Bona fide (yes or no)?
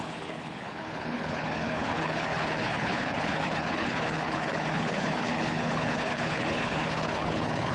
no